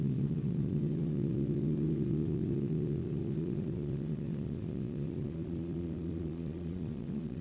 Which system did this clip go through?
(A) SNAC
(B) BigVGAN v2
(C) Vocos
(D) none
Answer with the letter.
C